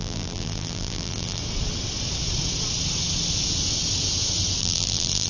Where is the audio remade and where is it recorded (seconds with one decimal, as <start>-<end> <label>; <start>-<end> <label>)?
0.0-1.4 remade; 1.4-4.6 recorded; 4.6-5.3 remade